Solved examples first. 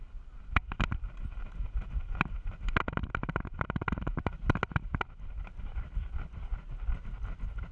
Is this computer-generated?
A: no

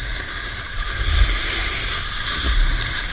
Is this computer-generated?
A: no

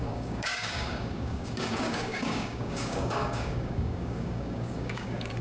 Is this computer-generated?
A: yes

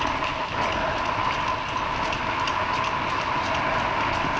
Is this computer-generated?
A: no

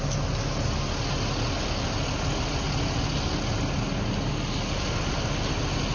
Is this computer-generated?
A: no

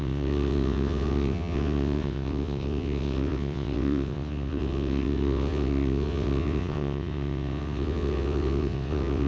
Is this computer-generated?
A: yes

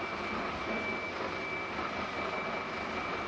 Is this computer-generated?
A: no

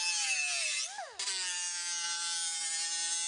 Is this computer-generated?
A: no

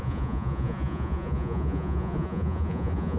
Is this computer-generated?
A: yes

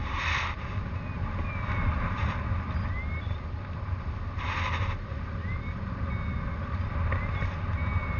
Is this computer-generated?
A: no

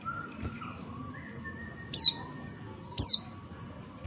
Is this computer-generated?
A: no